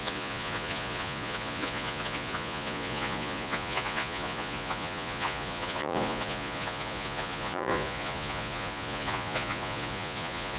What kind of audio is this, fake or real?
fake